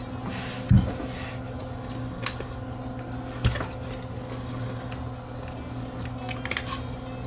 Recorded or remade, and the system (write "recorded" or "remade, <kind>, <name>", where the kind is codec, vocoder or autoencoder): recorded